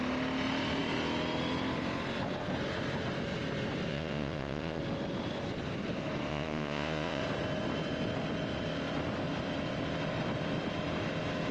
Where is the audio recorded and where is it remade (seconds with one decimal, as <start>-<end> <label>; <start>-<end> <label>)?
0.0-3.9 recorded; 3.9-4.8 remade; 4.8-6.3 recorded; 6.3-7.2 remade; 7.2-11.5 recorded